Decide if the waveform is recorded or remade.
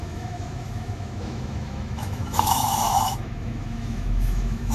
remade